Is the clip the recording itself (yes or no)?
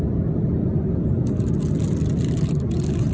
yes